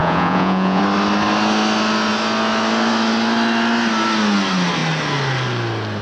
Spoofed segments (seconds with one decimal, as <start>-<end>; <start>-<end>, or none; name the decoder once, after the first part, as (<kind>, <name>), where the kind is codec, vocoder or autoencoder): 0.0-0.8 (vocoder, Vocos)